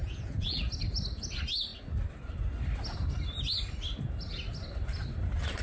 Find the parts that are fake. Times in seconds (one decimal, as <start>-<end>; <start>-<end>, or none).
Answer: 0.0-0.7